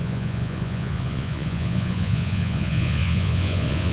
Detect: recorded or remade remade